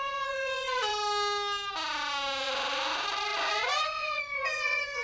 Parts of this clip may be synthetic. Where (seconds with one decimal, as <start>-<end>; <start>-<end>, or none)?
0.0-0.9; 2.4-5.0